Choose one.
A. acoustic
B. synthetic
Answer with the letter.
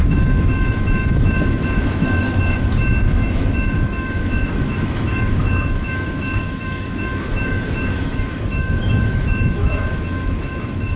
B